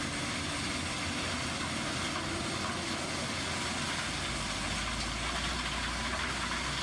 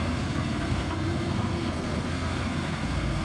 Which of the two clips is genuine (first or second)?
first